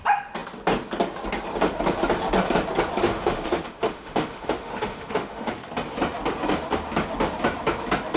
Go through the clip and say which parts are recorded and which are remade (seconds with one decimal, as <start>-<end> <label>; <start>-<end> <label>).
0.0-3.0 recorded; 3.0-5.5 remade; 5.5-8.2 recorded